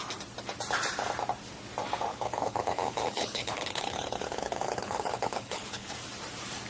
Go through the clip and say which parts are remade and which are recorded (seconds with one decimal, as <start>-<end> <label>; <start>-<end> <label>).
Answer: 0.0-2.1 recorded; 2.1-5.9 remade; 5.9-6.7 recorded